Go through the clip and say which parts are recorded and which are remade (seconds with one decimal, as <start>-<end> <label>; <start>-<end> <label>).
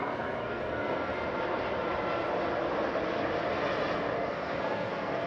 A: 0.0-1.1 remade; 1.1-4.3 recorded; 4.3-5.3 remade